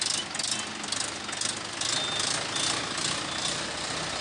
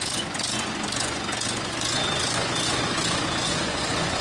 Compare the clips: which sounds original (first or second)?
first